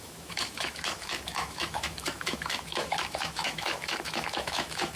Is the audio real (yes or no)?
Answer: no